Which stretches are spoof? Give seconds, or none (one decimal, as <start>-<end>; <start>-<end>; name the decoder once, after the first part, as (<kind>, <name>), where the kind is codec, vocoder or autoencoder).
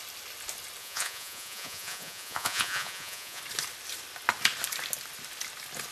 0.8-3.4 (vocoder, Vocos)